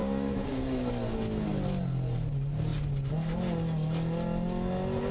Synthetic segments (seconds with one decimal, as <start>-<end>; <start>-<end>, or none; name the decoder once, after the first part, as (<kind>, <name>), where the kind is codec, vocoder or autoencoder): 0.0-0.9 (codec, DAC)